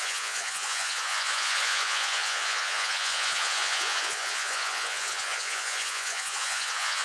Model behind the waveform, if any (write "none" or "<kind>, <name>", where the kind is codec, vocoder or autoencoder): vocoder, Vocos